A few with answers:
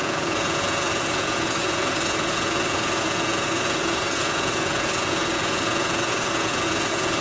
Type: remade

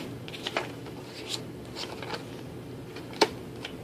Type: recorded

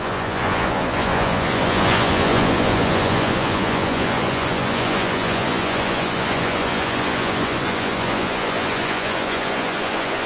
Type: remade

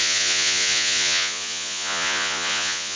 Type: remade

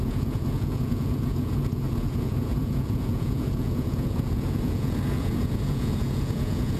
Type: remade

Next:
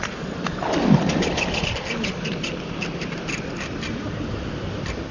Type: recorded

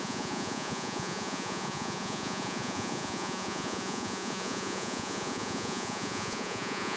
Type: remade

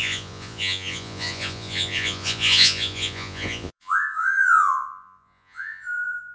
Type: remade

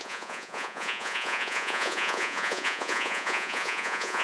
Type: remade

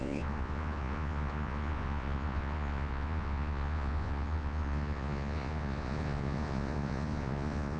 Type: remade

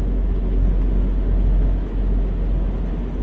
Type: recorded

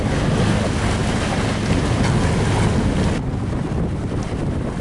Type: recorded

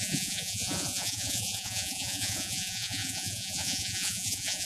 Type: remade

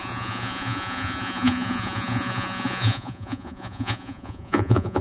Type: remade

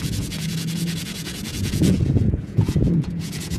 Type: remade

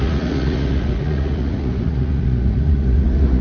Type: remade